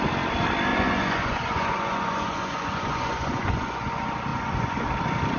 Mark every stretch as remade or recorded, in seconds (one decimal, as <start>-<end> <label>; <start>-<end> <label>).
0.0-0.7 recorded; 0.7-3.9 remade; 3.9-4.3 recorded; 4.3-4.9 remade; 4.9-5.4 recorded